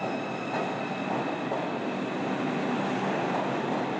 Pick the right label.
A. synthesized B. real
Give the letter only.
B